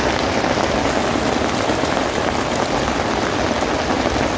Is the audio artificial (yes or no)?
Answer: no